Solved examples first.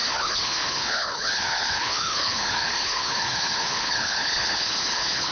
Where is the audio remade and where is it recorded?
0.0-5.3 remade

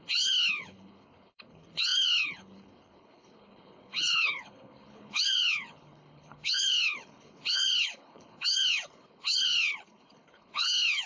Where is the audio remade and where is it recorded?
0.0-11.1 remade

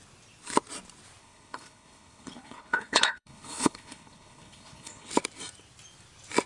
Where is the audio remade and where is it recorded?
0.0-1.2 recorded; 1.2-5.1 remade; 5.1-6.5 recorded

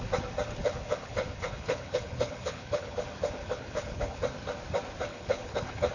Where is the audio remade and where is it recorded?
0.0-0.6 recorded; 0.6-3.0 remade; 3.0-3.4 recorded; 3.4-4.2 remade; 4.2-5.1 recorded; 5.1-5.9 remade